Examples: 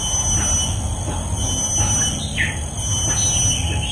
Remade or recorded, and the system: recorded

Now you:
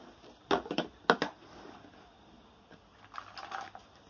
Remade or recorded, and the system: recorded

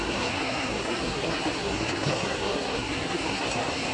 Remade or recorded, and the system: remade, codec, SNAC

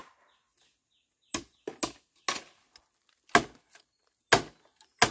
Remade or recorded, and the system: recorded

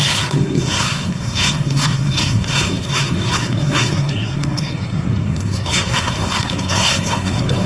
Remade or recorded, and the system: remade, codec, SNAC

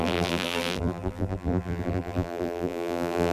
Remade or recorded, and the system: remade, vocoder, BigVGAN v2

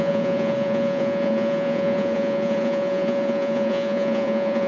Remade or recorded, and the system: remade, vocoder, Vocos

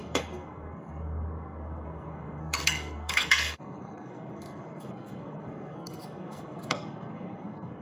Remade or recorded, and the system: remade, codec, SNAC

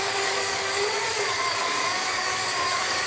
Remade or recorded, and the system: remade, codec, DAC